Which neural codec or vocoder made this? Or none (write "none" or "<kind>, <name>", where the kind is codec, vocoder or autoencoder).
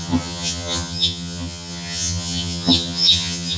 vocoder, HiFi-GAN